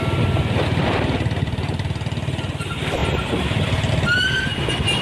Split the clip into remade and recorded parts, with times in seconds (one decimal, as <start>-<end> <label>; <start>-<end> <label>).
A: 0.0-3.0 recorded; 3.0-3.9 remade; 3.9-5.0 recorded